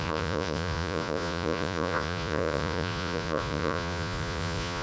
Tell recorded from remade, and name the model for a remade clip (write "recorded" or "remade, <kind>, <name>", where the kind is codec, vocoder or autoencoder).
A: remade, vocoder, Vocos